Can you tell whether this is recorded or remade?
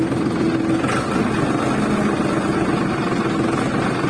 recorded